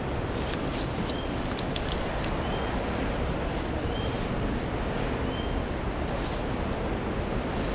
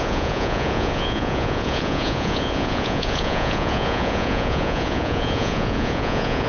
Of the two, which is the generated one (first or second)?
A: second